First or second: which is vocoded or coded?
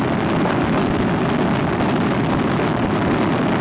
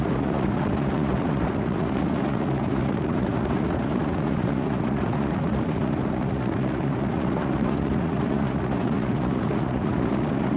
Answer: second